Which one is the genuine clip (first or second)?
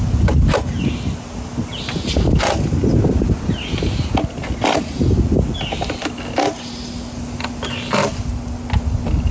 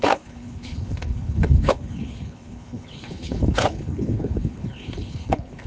first